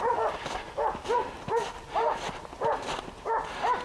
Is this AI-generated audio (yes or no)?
no